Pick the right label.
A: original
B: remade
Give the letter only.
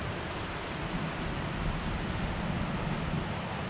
A